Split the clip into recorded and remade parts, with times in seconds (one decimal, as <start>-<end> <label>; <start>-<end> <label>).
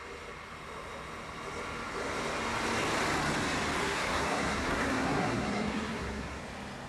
0.0-3.8 recorded; 3.8-6.4 remade; 6.4-6.9 recorded